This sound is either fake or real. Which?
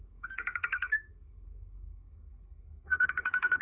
fake